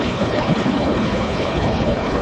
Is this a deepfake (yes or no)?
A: yes